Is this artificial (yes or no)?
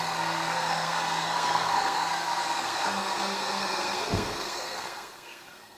yes